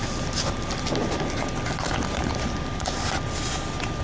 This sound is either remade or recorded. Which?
recorded